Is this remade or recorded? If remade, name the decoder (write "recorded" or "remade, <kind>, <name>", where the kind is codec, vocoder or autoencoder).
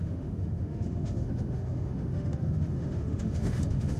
remade, autoencoder, DAC-VAE